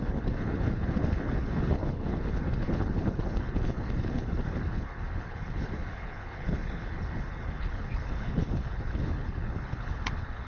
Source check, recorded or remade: remade